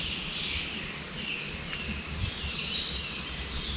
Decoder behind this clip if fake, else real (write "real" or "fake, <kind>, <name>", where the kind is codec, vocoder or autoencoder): real